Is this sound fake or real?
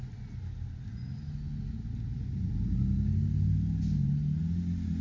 real